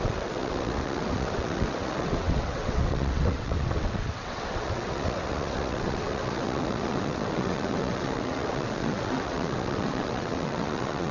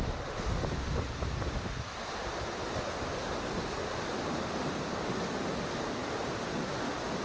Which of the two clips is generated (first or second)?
first